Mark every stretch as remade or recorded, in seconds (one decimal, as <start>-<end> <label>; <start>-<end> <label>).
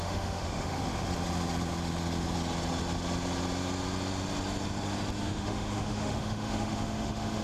0.0-0.8 remade; 0.8-5.2 recorded; 5.2-7.4 remade